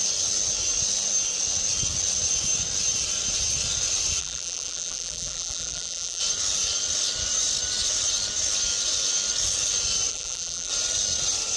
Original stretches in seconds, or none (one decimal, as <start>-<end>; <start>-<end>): 0.0-4.2; 6.2-10.1; 10.7-11.6